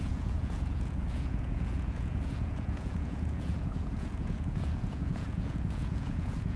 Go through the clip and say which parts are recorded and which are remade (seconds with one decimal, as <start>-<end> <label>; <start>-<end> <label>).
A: 0.0-6.6 remade